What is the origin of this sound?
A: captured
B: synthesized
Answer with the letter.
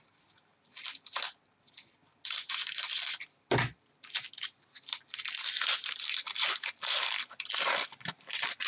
A